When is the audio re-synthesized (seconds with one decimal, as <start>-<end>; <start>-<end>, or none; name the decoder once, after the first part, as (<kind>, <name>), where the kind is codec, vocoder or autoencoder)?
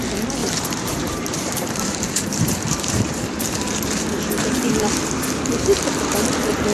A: 0.4-3.5 (vocoder, BigVGAN v2)